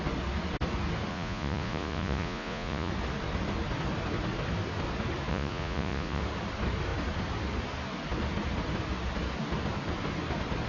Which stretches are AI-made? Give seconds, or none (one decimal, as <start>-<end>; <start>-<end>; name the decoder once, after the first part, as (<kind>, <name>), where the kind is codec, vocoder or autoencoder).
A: 1.1-2.9 (vocoder, Vocos); 5.3-6.2